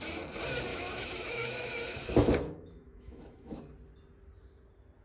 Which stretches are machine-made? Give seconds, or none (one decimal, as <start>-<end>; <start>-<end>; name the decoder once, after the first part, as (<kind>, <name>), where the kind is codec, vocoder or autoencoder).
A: 0.7-3.7 (autoencoder, DAC-VAE)